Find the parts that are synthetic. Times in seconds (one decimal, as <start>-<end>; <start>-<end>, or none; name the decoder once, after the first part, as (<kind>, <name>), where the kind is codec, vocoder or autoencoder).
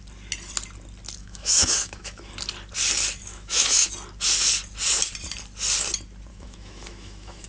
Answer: 1.2-2.3 (autoencoder, DAC-VAE); 3.3-3.9; 6.3-7.5